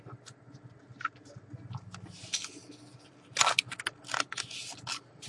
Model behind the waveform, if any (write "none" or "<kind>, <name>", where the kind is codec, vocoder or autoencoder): none